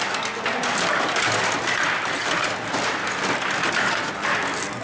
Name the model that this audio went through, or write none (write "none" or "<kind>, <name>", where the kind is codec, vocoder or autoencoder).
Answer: none